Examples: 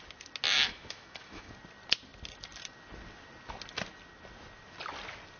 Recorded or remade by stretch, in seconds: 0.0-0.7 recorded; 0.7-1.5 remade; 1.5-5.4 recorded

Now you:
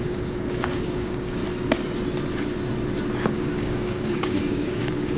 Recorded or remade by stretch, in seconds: 0.0-1.4 remade; 1.4-3.3 recorded; 3.3-5.2 remade

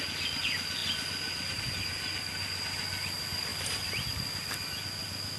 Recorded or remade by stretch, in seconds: 0.0-5.4 recorded

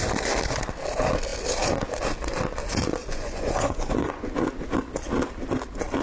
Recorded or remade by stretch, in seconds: 0.0-3.0 recorded; 3.0-4.5 remade; 4.5-6.0 recorded